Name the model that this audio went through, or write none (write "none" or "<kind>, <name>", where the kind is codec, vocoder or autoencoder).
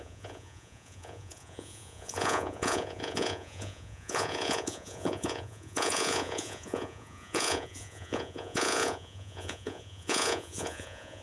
vocoder, Vocos